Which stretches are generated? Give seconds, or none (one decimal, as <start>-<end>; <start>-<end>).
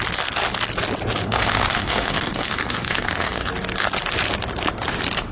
1.2-3.5